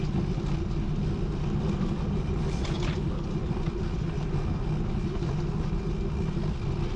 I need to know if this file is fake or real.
real